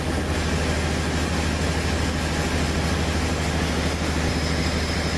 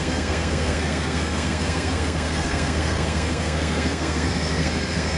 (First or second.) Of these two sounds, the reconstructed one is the second